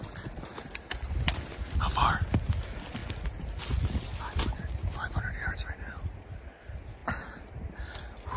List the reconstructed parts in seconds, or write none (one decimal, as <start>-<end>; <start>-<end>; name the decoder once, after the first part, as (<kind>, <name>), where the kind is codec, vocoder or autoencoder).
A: 7.0-7.8 (vocoder, BigVGAN v2)

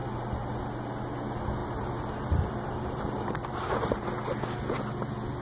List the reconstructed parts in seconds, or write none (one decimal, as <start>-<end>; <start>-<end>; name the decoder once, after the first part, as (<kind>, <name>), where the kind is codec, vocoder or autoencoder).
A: 1.6-4.8 (vocoder, BigVGAN v2)

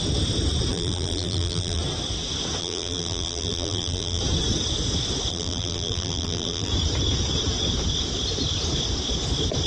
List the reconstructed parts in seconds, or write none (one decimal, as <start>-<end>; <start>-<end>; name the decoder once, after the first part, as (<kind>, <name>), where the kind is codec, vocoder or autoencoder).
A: 0.7-1.8 (vocoder, BigVGAN v2); 2.6-4.2; 5.3-6.7

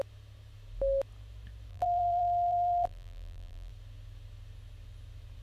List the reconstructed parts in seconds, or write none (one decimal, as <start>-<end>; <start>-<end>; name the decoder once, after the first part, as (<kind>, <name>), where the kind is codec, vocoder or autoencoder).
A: 1.7-3.7 (vocoder, BigVGAN v2)

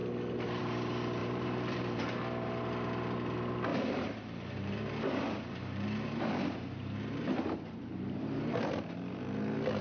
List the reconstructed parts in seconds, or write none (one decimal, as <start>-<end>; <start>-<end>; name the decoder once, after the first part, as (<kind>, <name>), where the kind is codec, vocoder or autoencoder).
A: 1.2-2.0 (vocoder, BigVGAN v2); 3.7-8.9

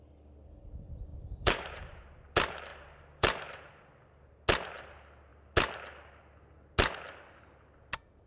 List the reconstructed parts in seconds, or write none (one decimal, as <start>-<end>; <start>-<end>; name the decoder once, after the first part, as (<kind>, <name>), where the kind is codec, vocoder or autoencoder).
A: 1.1-2.0 (vocoder, BigVGAN v2); 2.7-3.7

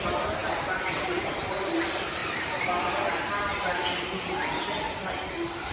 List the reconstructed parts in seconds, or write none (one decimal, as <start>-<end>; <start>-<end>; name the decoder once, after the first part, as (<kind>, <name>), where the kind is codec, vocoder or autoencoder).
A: 0.0-2.2 (vocoder, BigVGAN v2)

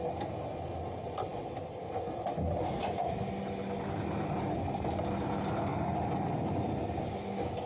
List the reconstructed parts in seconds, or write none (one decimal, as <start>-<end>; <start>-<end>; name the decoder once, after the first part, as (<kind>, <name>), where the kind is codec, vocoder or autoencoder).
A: none